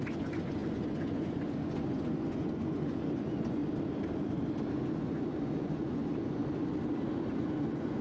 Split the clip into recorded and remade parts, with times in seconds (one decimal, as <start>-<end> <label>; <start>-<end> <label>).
0.0-3.6 remade; 3.6-4.7 recorded; 4.7-6.4 remade; 6.4-7.3 recorded; 7.3-8.0 remade